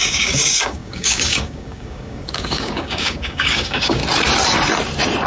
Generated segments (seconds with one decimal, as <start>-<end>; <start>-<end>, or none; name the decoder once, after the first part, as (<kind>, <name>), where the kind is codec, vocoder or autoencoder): 0.0-4.0 (codec, DAC)